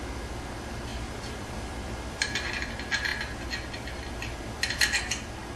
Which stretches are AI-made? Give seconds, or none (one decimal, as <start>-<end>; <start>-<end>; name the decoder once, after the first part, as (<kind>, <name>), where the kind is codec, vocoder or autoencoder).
0.9-2.7 (vocoder, BigVGAN v2)